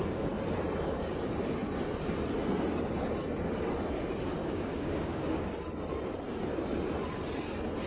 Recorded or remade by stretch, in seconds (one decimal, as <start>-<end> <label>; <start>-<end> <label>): 0.0-4.4 recorded; 4.4-5.5 remade; 5.5-7.9 recorded